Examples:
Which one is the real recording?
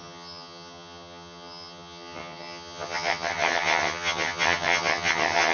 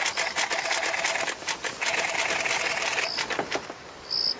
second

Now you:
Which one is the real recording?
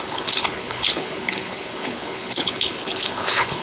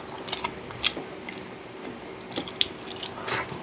second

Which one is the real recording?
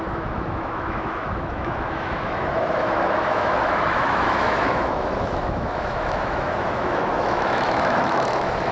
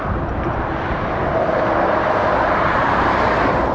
second